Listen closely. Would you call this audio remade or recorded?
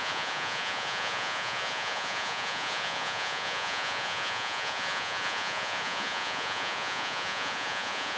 remade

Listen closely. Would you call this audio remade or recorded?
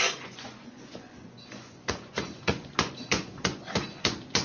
remade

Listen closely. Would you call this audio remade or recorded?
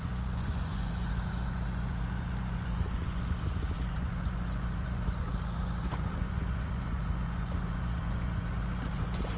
remade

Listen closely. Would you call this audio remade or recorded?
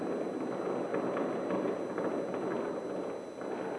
recorded